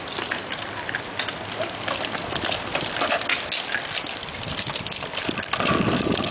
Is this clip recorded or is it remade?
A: recorded